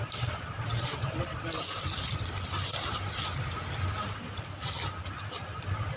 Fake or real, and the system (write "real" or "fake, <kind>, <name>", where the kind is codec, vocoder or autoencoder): real